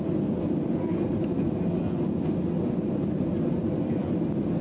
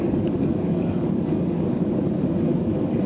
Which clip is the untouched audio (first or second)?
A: first